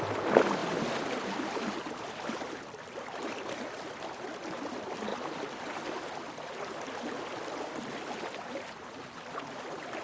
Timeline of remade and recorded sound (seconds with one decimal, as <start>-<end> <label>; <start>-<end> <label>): 0.0-10.0 recorded